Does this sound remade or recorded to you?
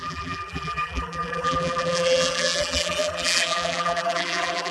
remade